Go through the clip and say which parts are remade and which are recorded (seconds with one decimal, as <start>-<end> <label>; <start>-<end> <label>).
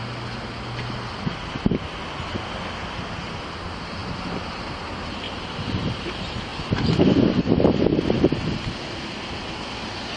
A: 0.0-10.2 recorded